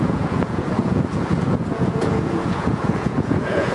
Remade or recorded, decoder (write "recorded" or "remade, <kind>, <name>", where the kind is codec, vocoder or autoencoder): remade, vocoder, Vocos